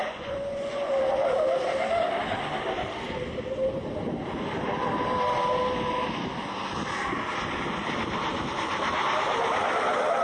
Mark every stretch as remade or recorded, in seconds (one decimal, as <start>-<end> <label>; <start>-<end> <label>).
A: 0.0-0.9 remade; 0.9-10.2 recorded